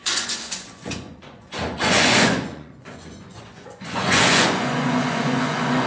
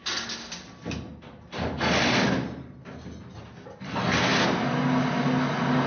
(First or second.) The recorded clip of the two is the second